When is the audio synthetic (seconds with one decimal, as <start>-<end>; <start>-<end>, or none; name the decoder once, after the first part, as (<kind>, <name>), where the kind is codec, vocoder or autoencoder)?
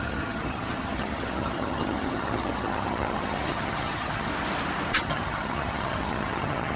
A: 0.0-4.3 (vocoder, HiFi-GAN); 4.9-6.8